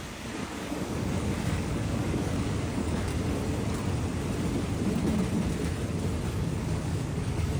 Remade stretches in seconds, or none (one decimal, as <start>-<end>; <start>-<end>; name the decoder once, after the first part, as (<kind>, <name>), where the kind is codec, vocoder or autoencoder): 0.0-3.1 (codec, DAC); 6.3-7.6